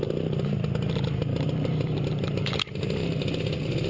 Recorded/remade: recorded